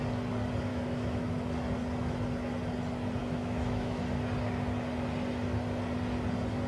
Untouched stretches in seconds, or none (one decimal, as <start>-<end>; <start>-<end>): 0.0-0.7; 1.3-3.2; 4.0-6.7